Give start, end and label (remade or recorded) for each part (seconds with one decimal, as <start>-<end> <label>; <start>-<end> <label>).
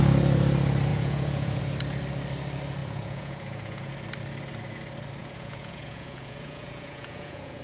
0.0-0.9 recorded; 0.9-1.6 remade; 1.6-2.8 recorded; 2.8-3.9 remade; 3.9-5.2 recorded; 5.2-7.6 remade